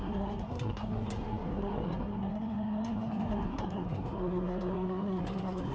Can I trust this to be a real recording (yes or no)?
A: no